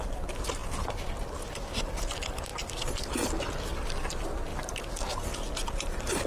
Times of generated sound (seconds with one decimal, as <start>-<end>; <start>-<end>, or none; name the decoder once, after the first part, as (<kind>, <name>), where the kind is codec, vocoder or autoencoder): 4.5-5.1 (vocoder, BigVGAN v2)